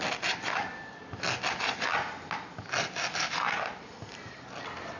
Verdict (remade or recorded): recorded